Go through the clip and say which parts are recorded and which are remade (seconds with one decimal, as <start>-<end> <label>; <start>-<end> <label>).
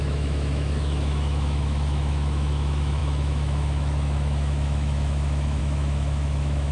0.0-6.7 remade